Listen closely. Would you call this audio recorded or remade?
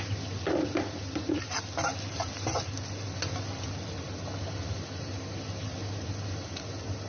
recorded